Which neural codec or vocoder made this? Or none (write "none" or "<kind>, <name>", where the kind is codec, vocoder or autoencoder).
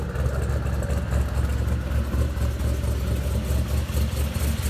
none